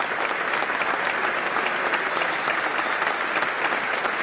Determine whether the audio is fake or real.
real